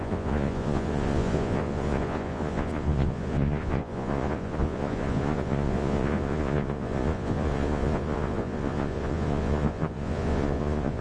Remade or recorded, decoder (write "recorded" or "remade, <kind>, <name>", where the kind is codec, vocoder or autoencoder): remade, vocoder, Vocos